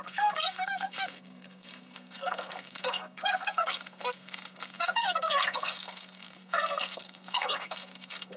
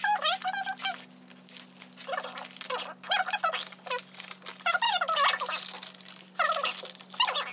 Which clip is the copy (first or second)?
first